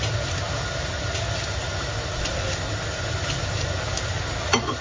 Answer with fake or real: real